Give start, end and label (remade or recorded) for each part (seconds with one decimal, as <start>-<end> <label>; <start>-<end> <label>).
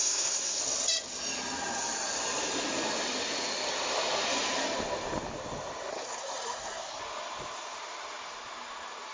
0.0-0.6 remade; 0.6-5.9 recorded; 5.9-7.0 remade; 7.0-9.1 recorded